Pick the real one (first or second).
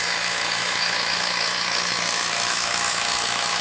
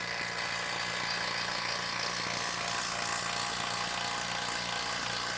second